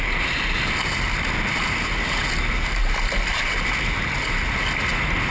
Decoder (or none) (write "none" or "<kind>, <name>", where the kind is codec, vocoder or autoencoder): none